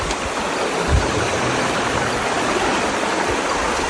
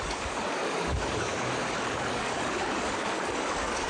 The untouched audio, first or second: first